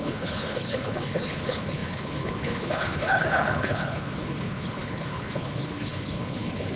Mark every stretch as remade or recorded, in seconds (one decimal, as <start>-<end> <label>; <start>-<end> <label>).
0.0-6.8 remade